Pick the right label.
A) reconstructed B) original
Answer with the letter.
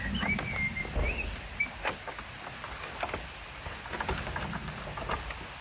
B